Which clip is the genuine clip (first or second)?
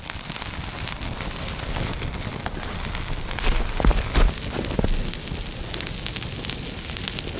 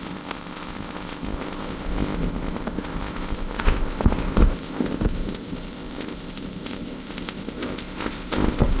first